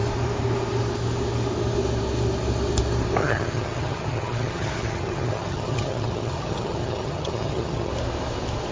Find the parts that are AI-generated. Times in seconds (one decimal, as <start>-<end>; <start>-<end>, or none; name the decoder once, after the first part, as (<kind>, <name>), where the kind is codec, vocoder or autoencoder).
3.2-7.9 (vocoder, HiFi-GAN)